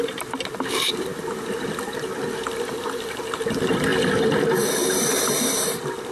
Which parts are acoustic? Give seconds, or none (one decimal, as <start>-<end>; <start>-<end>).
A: 1.1-2.8